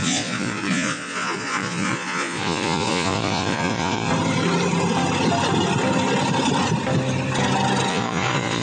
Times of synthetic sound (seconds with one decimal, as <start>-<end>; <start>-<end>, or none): 0.0-4.1; 7.9-8.6